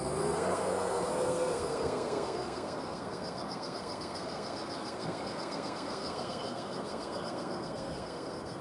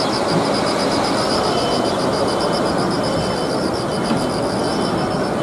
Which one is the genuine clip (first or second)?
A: second